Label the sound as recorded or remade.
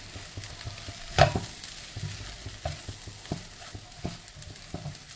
recorded